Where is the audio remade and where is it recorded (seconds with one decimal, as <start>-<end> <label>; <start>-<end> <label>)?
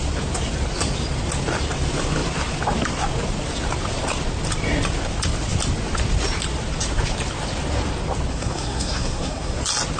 0.0-8.3 recorded; 8.3-9.6 remade; 9.6-10.0 recorded